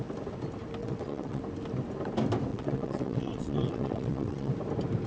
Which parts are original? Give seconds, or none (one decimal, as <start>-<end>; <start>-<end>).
0.0-0.8; 1.4-2.5; 4.5-5.1